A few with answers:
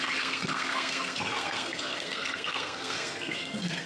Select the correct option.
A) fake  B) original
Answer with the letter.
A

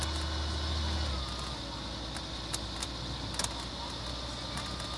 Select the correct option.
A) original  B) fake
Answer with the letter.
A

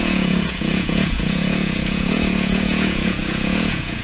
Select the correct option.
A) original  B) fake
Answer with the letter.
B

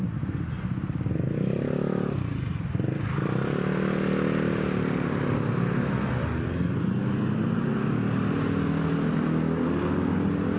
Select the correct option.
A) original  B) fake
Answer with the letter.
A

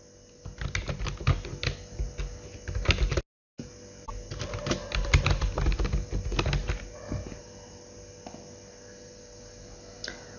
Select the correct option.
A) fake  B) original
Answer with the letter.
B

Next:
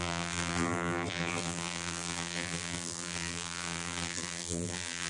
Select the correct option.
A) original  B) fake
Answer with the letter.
B